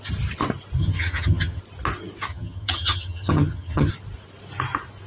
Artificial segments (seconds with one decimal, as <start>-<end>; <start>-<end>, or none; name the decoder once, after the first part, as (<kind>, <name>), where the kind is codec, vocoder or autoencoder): 0.8-1.6 (vocoder, HiFi-GAN); 2.3-3.9